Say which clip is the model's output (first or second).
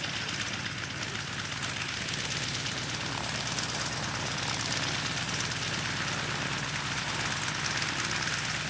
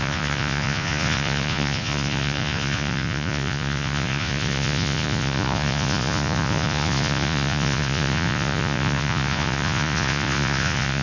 second